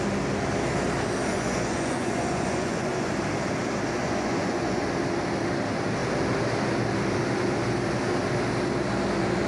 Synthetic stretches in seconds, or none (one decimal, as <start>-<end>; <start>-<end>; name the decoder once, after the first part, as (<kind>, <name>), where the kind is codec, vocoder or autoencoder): 1.3-3.1 (vocoder, Vocos); 4.0-4.8